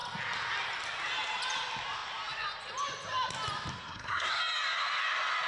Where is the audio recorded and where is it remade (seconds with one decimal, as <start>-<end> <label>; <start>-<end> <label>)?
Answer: 0.0-3.7 recorded; 3.7-4.4 remade; 4.4-5.5 recorded